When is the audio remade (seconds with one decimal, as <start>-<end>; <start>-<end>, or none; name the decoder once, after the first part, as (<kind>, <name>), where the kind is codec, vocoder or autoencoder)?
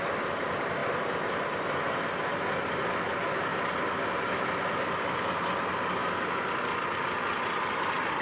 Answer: none